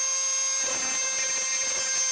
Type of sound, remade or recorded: recorded